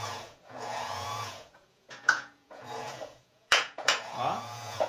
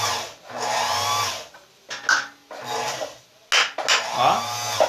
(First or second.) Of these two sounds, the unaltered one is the second